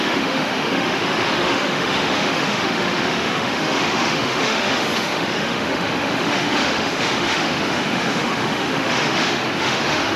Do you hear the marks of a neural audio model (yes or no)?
yes